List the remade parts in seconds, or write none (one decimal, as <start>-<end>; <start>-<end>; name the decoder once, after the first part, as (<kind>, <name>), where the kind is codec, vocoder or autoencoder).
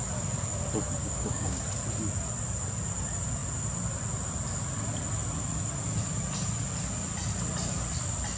1.0-1.6 (codec, DAC)